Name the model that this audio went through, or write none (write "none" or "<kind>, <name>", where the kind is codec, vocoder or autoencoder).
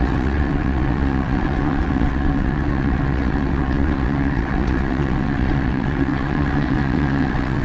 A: vocoder, WaveNeXt